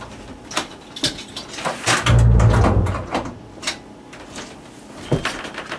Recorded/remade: recorded